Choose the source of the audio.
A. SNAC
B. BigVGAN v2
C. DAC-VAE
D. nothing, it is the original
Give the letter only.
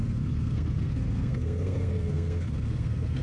A